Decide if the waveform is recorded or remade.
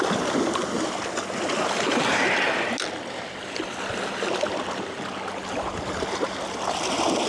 recorded